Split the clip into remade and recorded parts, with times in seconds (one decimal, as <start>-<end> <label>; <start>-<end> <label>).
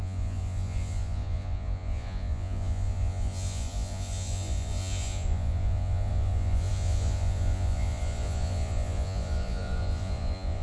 0.0-10.6 remade